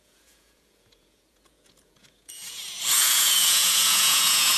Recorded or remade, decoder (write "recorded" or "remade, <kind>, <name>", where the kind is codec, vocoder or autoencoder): remade, vocoder, Vocos